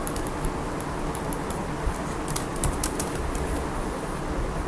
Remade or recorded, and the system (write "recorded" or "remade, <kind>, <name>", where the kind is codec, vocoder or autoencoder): recorded